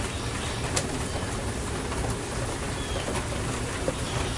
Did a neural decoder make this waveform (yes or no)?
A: no